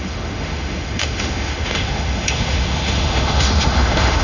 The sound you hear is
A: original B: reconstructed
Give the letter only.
B